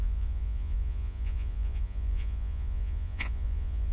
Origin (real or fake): fake